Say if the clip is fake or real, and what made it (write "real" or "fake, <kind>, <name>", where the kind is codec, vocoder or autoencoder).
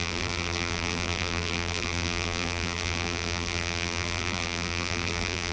fake, vocoder, BigVGAN v2